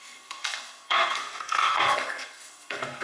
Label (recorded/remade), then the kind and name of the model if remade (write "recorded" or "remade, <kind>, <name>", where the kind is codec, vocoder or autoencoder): remade, codec, SNAC